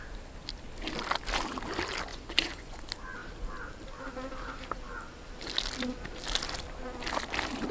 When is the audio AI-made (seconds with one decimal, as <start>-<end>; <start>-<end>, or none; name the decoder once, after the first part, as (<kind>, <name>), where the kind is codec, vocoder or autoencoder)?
2.1-2.8 (vocoder, Vocos)